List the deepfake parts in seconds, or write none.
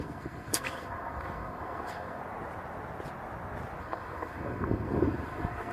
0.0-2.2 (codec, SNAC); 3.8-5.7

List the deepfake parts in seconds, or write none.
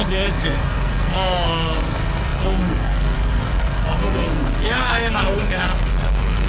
0.0-6.5 (codec, SNAC)